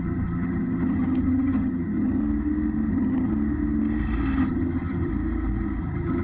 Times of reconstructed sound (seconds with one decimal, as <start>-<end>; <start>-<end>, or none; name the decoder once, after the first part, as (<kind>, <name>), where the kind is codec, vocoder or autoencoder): 0.0-2.2 (vocoder, HiFi-GAN); 2.9-3.3; 4.4-5.1; 5.8-6.2